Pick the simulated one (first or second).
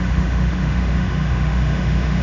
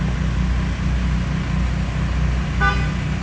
first